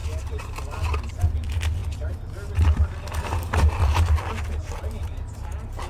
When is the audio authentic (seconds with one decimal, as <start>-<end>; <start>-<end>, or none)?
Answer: 0.0-5.9